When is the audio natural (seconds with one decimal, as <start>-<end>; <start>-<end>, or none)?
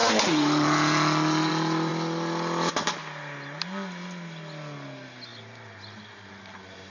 0.0-6.9